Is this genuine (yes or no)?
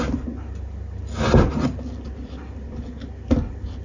yes